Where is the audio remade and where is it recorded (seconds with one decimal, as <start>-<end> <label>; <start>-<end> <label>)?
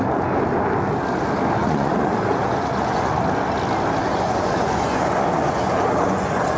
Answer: 0.0-1.6 recorded; 1.6-3.2 remade; 3.2-4.0 recorded; 4.0-6.6 remade